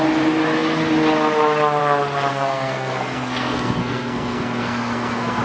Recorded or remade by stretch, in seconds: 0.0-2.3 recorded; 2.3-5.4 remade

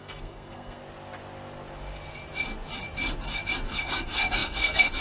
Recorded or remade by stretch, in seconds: 0.0-0.8 remade; 0.8-3.8 recorded; 3.8-5.0 remade

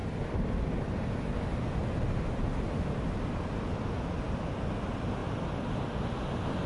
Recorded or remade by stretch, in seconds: 0.0-6.7 recorded